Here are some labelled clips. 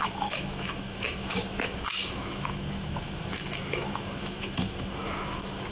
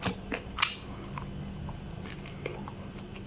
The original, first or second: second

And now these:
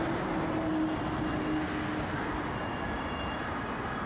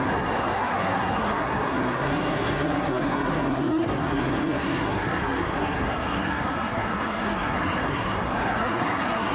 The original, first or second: first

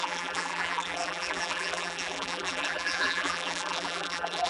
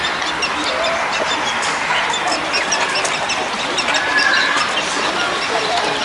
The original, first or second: second